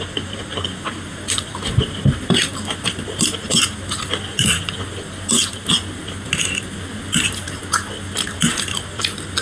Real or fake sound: real